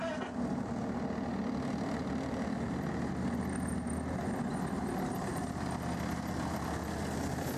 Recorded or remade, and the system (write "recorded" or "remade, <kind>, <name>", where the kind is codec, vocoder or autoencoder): recorded